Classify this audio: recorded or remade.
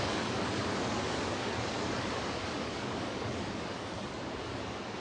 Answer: remade